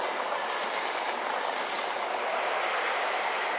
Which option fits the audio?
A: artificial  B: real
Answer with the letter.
B